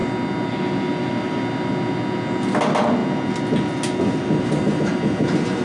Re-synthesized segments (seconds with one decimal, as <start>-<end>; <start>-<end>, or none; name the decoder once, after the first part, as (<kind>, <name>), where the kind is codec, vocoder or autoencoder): none

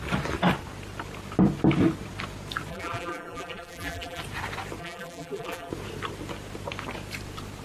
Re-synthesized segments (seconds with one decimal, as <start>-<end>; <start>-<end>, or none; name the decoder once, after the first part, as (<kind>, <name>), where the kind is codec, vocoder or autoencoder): 2.7-4.2 (vocoder, BigVGAN v2); 4.8-5.7

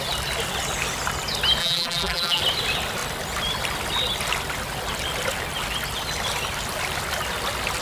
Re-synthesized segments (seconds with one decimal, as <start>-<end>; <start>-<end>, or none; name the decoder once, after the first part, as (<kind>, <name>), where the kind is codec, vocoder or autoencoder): 1.6-2.4 (vocoder, BigVGAN v2)

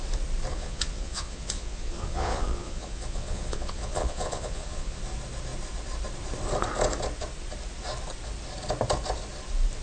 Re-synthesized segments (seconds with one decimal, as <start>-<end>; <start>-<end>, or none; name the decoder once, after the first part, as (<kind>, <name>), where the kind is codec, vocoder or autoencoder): 0.5-5.0 (vocoder, Vocos)

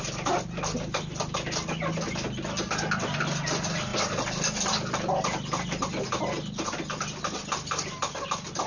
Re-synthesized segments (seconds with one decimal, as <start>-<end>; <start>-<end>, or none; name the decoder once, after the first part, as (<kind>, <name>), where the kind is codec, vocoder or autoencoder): none

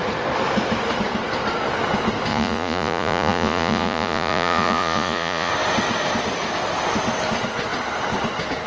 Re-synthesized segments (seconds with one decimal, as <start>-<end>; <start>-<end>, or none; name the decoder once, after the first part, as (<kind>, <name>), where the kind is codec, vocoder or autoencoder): 2.3-5.5 (vocoder, Vocos)